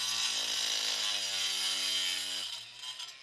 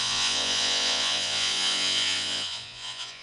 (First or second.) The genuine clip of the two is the first